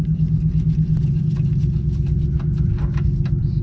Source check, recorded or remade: recorded